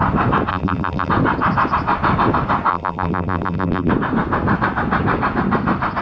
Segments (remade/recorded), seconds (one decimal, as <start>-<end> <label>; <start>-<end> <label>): 0.0-0.5 recorded; 0.5-1.1 remade; 1.1-2.7 recorded; 2.7-3.9 remade; 3.9-6.0 recorded